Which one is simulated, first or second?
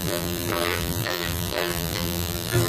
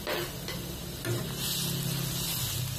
first